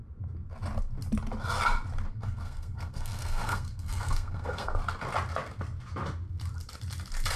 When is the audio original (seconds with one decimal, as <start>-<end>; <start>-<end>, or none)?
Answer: 0.0-2.1; 4.8-7.4